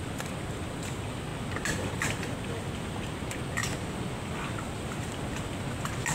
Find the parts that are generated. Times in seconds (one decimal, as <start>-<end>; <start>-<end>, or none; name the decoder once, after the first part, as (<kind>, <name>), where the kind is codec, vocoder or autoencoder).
none